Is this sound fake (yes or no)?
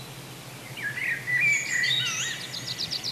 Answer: no